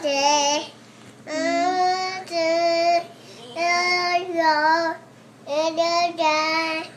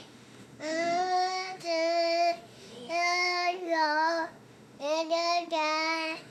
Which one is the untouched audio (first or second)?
first